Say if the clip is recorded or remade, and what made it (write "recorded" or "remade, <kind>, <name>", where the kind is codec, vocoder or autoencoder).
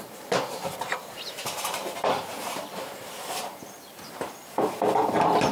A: remade, vocoder, BigVGAN v2